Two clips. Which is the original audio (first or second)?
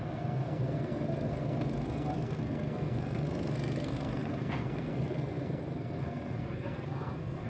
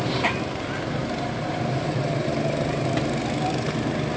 second